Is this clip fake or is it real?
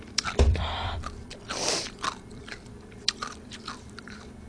fake